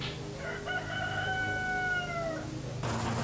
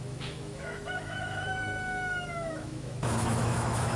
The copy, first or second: second